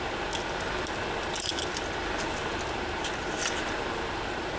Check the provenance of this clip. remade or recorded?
recorded